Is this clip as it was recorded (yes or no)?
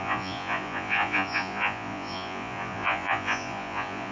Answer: no